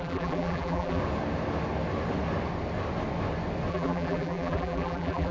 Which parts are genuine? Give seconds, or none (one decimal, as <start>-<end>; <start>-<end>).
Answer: 1.0-3.7